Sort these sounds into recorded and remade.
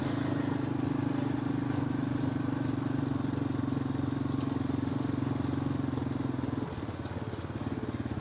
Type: recorded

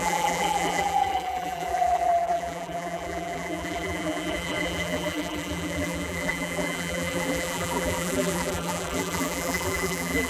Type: remade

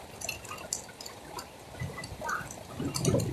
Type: recorded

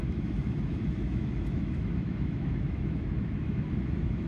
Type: remade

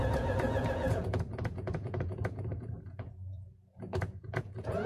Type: remade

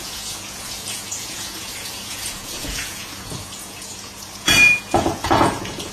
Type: remade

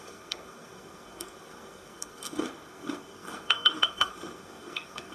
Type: remade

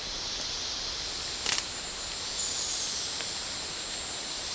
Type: recorded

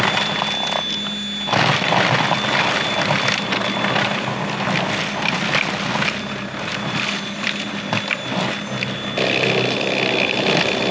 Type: recorded